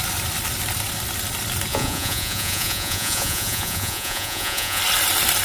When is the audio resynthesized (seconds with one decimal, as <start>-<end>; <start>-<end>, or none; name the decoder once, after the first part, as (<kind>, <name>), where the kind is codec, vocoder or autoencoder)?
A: 1.7-4.8 (vocoder, Vocos)